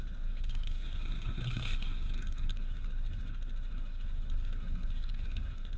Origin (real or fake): fake